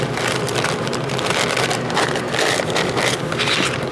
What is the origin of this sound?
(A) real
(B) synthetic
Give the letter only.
A